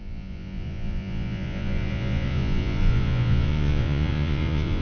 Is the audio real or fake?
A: fake